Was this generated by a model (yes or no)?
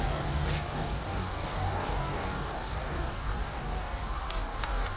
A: yes